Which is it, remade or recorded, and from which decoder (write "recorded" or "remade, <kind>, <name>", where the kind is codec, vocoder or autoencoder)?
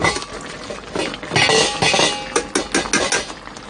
recorded